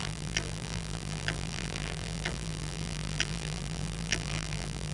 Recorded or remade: remade